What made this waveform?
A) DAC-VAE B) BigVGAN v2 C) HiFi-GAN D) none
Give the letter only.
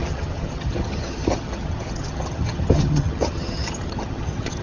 C